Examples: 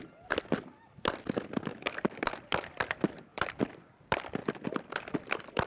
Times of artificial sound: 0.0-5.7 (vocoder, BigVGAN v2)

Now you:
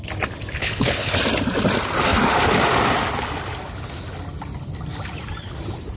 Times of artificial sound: 0.6-1.2 (codec, HILCodec)

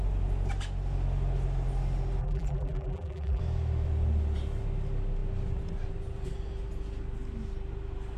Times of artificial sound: 2.2-3.4 (vocoder, BigVGAN v2)